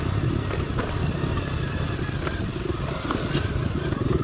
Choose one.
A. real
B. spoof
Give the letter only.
A